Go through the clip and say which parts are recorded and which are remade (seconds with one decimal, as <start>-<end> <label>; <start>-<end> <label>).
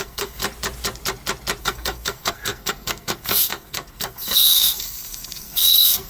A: 0.0-0.4 remade; 0.4-1.6 recorded; 1.6-6.1 remade